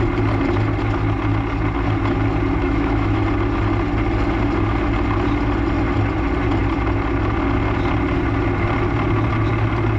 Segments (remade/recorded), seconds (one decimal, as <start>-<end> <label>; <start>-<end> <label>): 0.0-2.6 recorded; 2.6-3.2 remade; 3.2-10.0 recorded